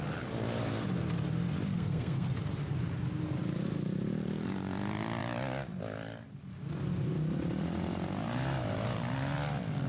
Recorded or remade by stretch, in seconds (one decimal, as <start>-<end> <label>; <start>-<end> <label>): 0.0-1.7 recorded; 1.7-2.3 remade; 2.3-9.9 recorded